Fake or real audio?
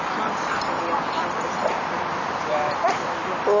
real